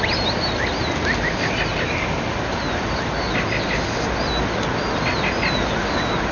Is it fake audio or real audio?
real